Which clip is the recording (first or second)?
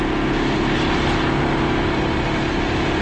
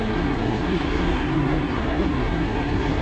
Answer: first